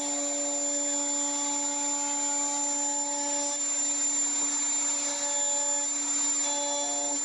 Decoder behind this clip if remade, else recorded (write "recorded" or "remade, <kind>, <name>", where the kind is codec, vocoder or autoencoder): recorded